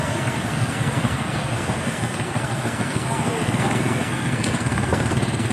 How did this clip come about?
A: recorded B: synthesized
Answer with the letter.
B